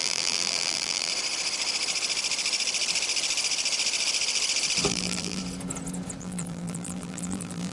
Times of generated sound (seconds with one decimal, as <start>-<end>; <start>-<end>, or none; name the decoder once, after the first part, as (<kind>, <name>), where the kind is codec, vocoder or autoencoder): 0.0-1.1 (vocoder, BigVGAN v2); 4.9-5.4; 6.2-7.7